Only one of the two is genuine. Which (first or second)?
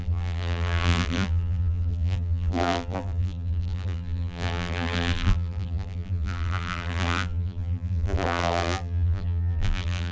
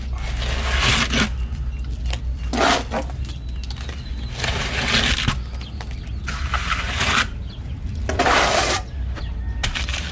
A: second